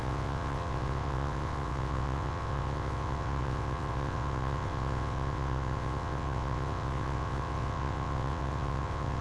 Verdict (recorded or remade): remade